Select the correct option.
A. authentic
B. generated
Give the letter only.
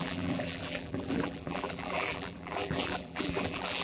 B